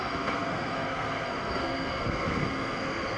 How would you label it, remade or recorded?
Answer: remade